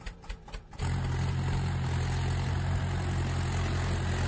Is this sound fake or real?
real